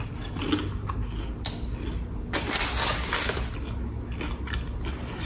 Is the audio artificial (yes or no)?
no